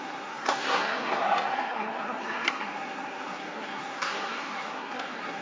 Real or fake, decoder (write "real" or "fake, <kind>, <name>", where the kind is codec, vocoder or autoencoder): fake, codec, SNAC